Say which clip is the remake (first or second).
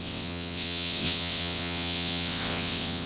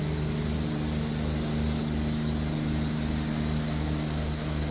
first